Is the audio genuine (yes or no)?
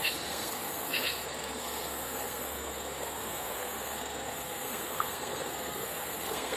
no